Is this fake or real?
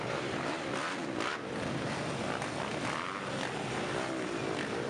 real